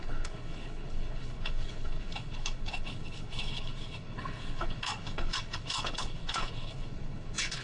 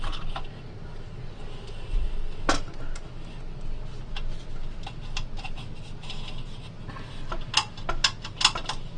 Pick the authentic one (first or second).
second